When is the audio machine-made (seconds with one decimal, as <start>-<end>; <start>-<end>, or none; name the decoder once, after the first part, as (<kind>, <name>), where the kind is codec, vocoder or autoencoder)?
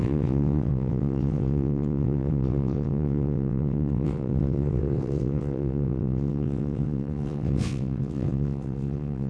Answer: 0.0-9.3 (vocoder, WaveNeXt)